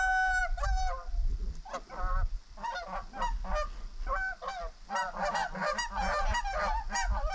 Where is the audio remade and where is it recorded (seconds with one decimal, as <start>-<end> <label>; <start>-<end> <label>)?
0.0-7.3 recorded